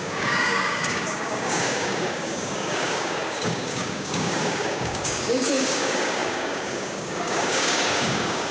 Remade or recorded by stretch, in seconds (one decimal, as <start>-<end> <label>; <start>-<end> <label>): 0.0-8.5 remade